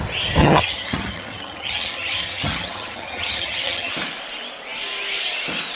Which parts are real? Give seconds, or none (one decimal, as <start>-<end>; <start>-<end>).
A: 0.0-0.4; 3.9-5.8